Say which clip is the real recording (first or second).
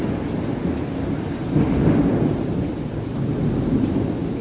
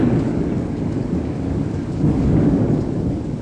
first